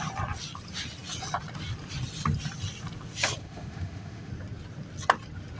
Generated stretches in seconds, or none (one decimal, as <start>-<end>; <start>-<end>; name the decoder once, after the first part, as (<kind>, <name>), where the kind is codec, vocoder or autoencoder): 3.4-4.3 (autoencoder, DAC-VAE)